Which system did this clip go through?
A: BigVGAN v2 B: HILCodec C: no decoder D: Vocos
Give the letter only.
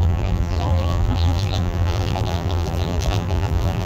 A